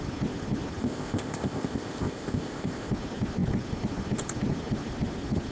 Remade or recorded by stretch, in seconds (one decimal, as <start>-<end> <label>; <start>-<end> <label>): 0.0-0.8 recorded; 0.8-2.9 remade; 2.9-5.5 recorded